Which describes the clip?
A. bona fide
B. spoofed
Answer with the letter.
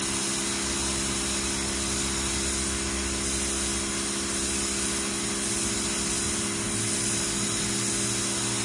A